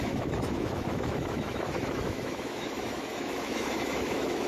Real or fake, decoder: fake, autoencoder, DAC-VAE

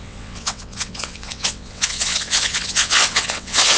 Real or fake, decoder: fake, vocoder, WaveNeXt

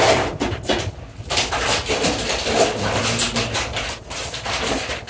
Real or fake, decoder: real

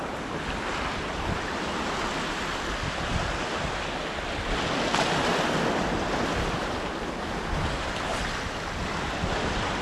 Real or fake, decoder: real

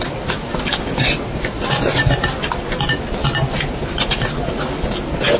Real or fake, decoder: real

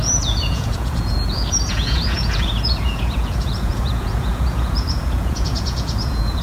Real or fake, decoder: fake, vocoder, Vocos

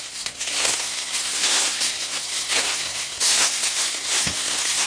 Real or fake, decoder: fake, codec, SNAC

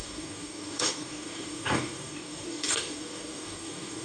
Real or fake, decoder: fake, codec, DAC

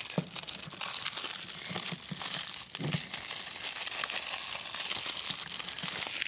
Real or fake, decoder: real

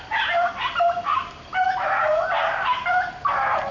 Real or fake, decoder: real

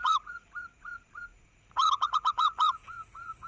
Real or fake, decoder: fake, vocoder, Vocos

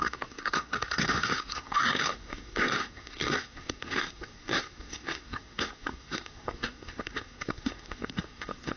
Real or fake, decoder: fake, codec, SNAC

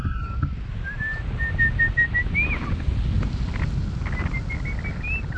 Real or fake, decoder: real